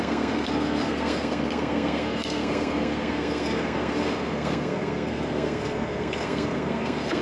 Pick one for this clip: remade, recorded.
remade